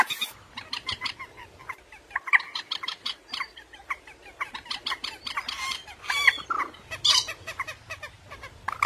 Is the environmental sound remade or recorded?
recorded